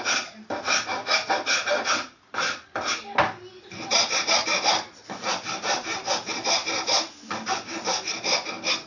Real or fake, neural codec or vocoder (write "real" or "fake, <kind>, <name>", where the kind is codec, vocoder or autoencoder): real